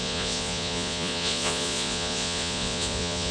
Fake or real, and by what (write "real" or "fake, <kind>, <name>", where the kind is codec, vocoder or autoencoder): fake, vocoder, Vocos